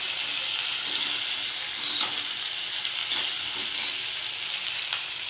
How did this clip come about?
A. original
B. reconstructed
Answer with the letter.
A